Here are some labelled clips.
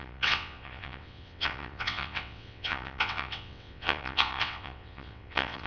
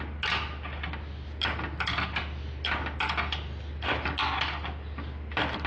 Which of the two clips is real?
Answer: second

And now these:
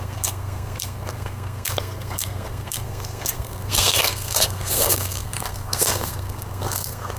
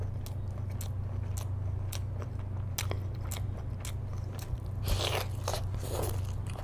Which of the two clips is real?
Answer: second